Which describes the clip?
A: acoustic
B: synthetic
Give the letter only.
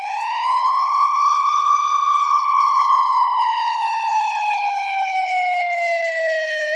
B